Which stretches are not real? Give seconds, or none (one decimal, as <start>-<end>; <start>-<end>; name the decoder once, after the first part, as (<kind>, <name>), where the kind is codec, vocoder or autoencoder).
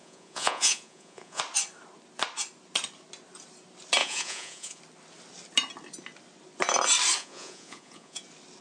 0.0-1.4 (vocoder, Vocos); 4.0-4.8; 7.2-8.2